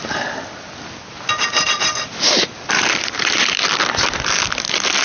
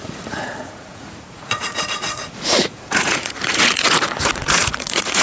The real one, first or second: first